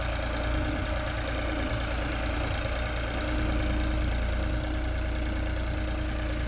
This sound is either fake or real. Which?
real